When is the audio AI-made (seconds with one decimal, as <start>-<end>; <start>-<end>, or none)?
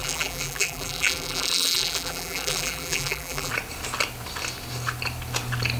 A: 0.0-3.5